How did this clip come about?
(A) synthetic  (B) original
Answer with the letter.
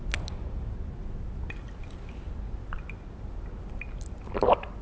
B